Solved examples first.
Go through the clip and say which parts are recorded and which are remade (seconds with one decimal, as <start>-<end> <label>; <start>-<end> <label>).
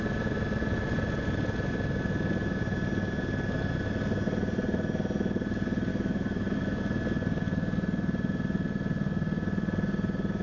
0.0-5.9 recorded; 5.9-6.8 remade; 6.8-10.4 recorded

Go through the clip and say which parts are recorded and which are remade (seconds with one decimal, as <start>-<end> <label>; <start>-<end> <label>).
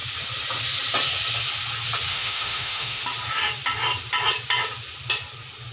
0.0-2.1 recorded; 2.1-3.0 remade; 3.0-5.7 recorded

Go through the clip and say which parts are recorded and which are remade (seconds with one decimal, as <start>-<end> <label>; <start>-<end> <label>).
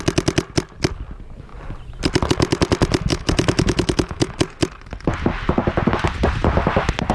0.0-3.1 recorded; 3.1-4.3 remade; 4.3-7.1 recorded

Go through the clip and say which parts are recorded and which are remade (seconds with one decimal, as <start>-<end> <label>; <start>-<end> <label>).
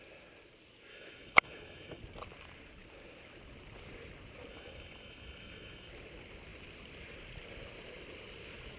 0.0-0.9 recorded; 0.9-2.0 remade; 2.0-4.5 recorded; 4.5-5.9 remade; 5.9-8.8 recorded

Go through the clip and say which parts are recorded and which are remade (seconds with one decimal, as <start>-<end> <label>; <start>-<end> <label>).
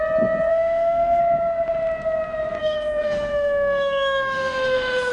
0.0-0.5 recorded; 0.5-1.2 remade; 1.2-2.6 recorded; 2.6-5.1 remade